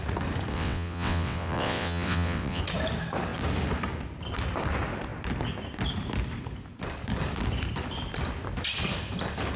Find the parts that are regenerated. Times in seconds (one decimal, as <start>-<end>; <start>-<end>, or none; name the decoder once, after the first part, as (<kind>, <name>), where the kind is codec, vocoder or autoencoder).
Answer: 0.5-2.6 (vocoder, WaveNeXt)